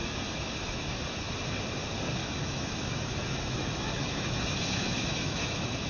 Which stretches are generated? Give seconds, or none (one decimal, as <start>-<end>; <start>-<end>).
0.0-1.0; 2.2-5.9